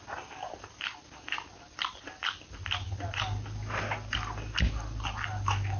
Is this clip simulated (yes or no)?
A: no